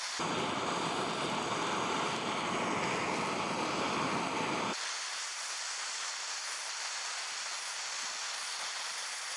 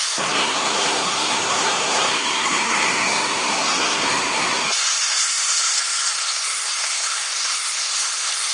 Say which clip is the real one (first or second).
first